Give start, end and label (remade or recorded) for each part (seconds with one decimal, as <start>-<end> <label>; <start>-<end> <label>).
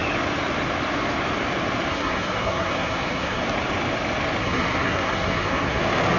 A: 0.0-1.9 recorded; 1.9-3.4 remade; 3.4-4.4 recorded; 4.4-5.8 remade; 5.8-6.2 recorded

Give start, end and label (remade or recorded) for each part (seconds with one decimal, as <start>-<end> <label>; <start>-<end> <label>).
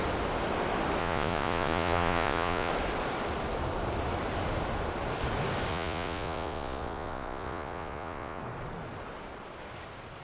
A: 0.0-1.0 recorded; 1.0-2.7 remade; 2.7-5.7 recorded; 5.7-8.4 remade; 8.4-10.2 recorded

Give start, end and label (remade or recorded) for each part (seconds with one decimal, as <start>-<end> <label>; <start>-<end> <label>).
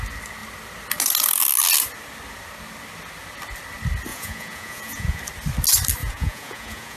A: 0.0-4.1 recorded; 4.1-5.2 remade; 5.2-6.0 recorded; 6.0-7.0 remade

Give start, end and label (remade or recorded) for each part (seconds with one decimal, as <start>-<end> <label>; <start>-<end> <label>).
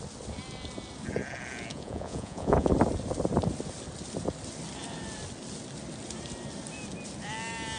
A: 0.0-1.7 recorded; 1.7-2.7 remade; 2.7-7.8 recorded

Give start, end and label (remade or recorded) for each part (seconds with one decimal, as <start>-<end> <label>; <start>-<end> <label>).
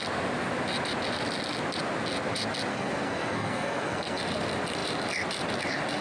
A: 0.0-2.7 recorded; 2.7-4.2 remade; 4.2-6.0 recorded